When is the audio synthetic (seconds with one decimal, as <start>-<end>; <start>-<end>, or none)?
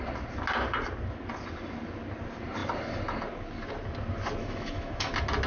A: 4.4-5.1